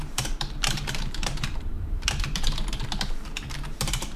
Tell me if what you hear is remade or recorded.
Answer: remade